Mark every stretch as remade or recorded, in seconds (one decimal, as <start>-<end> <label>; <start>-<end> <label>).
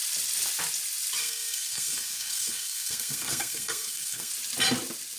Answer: 0.0-1.2 recorded; 1.2-4.3 remade; 4.3-5.2 recorded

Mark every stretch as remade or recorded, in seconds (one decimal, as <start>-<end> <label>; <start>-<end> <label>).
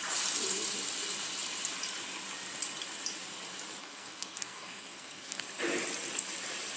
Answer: 0.0-3.8 recorded; 3.8-5.4 remade; 5.4-6.8 recorded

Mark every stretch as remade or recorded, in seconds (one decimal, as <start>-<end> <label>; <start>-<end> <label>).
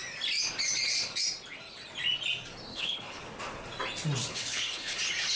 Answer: 0.0-2.7 recorded; 2.7-3.2 remade; 3.2-4.3 recorded; 4.3-5.0 remade; 5.0-5.4 recorded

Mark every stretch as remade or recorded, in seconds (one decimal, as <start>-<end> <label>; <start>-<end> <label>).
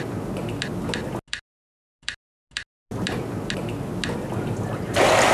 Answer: 0.0-5.3 recorded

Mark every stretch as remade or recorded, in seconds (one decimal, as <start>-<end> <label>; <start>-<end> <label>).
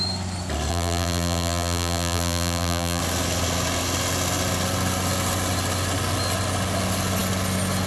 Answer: 0.0-0.7 recorded; 0.7-3.0 remade; 3.0-7.9 recorded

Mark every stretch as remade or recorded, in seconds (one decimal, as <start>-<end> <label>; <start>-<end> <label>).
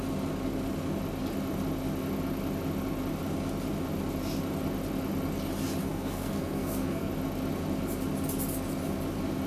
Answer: 0.0-5.8 recorded; 5.8-7.1 remade; 7.1-9.5 recorded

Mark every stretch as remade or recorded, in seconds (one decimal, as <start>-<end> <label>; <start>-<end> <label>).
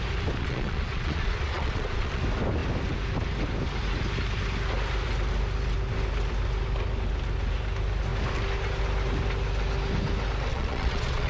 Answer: 0.0-0.4 recorded; 0.4-2.2 remade; 2.2-10.5 recorded; 10.5-11.3 remade